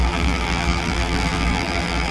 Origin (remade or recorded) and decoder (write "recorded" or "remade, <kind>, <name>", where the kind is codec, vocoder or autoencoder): remade, vocoder, BigVGAN v2